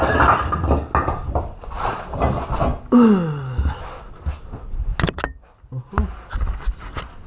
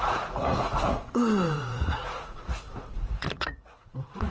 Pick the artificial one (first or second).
second